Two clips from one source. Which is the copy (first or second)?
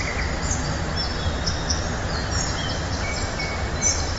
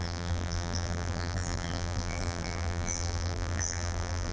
second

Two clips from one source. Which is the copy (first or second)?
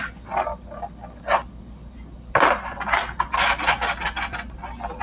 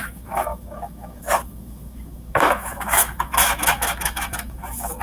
second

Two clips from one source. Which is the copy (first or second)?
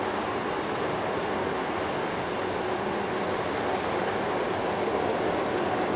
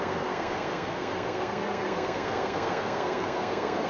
second